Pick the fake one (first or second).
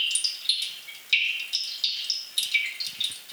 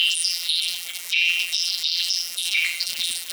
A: second